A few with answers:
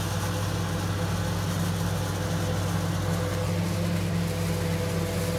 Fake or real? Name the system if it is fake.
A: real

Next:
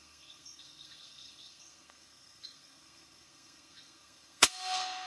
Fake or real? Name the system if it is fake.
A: fake, codec, SNAC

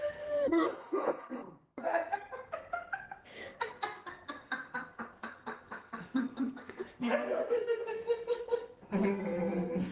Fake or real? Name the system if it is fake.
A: fake, codec, SNAC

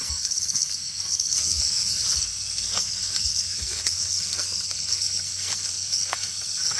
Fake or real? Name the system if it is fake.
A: fake, codec, SNAC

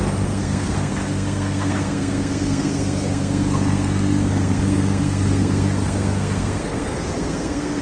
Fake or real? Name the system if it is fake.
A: fake, codec, SNAC